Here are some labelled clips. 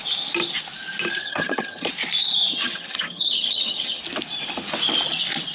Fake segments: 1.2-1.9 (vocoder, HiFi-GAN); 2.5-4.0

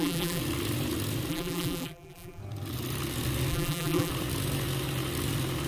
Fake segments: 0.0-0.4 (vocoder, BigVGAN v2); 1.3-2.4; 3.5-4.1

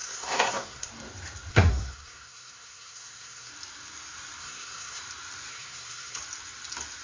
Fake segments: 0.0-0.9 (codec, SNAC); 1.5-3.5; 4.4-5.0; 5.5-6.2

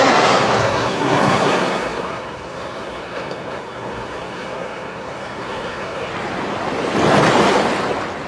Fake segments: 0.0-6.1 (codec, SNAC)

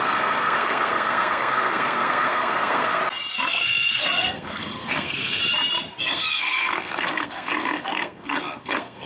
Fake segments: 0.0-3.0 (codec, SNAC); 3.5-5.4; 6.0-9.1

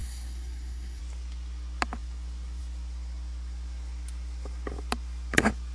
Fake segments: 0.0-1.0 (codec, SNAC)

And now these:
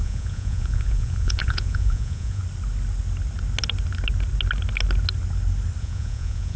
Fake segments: 0.0-2.4 (vocoder, Vocos); 5.8-6.6

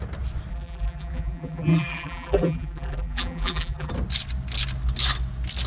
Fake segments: 0.5-3.9 (vocoder, BigVGAN v2)